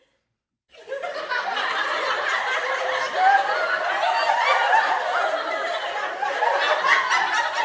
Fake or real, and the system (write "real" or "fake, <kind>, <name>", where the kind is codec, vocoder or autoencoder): real